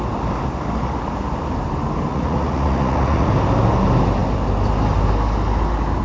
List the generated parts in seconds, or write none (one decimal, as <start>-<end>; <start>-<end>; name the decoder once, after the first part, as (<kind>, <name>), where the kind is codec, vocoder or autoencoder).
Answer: 2.1-3.3 (vocoder, Vocos)